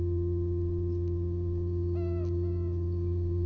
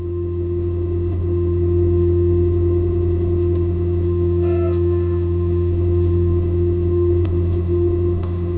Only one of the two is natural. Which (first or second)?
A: first